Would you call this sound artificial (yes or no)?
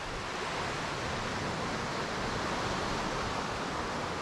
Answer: no